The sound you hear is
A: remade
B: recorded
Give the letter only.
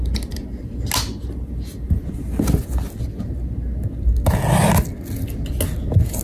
B